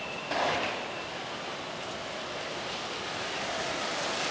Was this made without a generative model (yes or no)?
yes